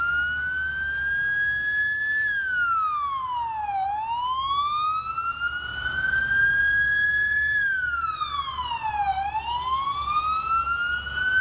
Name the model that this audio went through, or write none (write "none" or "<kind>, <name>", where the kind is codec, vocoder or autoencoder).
none